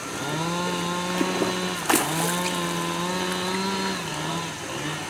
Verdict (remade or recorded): recorded